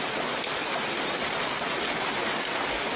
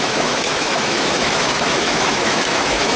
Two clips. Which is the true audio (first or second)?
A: first